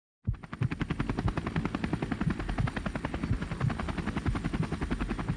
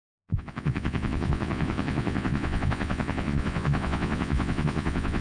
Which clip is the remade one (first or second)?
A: second